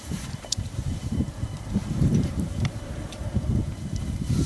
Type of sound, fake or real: fake